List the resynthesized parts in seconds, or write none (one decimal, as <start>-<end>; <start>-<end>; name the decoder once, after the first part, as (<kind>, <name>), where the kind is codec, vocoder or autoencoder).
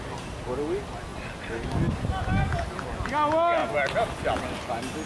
none